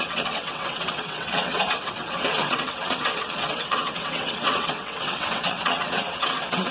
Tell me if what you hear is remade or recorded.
remade